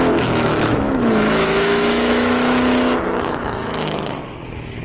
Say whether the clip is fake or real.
fake